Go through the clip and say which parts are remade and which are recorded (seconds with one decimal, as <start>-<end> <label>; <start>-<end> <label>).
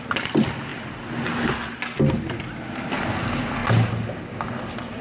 0.0-5.0 recorded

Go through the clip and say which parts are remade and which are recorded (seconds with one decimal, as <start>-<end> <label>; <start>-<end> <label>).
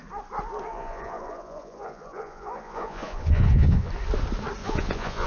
0.0-0.7 recorded; 0.7-3.9 remade; 3.9-4.6 recorded; 4.6-5.3 remade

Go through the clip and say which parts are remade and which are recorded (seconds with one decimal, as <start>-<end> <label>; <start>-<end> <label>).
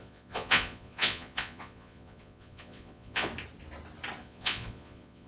0.0-3.3 remade; 3.3-4.2 recorded; 4.2-5.3 remade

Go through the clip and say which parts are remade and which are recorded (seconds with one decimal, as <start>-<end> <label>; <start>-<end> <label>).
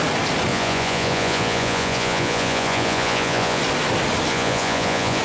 0.0-0.5 recorded; 0.5-3.6 remade; 3.6-4.3 recorded; 4.3-5.2 remade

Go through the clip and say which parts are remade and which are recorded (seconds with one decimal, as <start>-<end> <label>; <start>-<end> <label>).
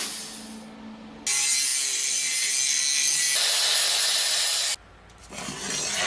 0.0-6.1 recorded